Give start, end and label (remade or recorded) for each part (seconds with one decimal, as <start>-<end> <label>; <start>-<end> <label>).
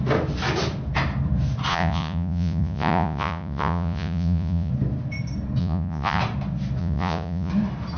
0.0-1.7 recorded; 1.7-4.7 remade; 4.7-5.6 recorded; 5.6-6.2 remade; 6.2-6.8 recorded; 6.8-7.5 remade; 7.5-8.0 recorded